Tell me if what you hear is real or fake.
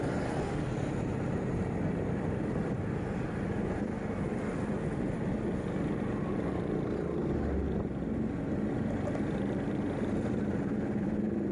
real